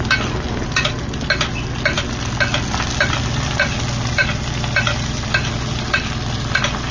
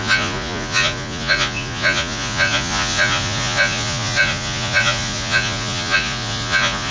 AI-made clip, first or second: second